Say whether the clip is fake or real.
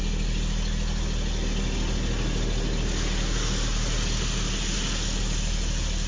real